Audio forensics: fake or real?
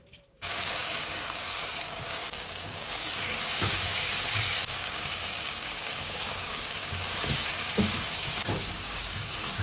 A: fake